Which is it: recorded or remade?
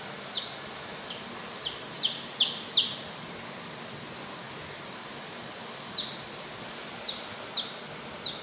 recorded